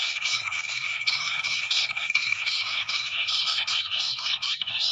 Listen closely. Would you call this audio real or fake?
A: fake